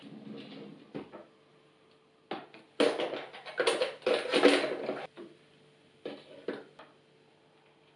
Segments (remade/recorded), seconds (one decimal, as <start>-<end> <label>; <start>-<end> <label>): 0.0-8.0 recorded